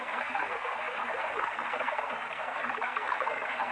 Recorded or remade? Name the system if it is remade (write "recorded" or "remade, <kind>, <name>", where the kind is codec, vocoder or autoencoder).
remade, codec, SNAC